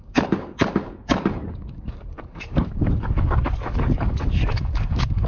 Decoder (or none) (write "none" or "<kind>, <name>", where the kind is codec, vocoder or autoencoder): codec, DAC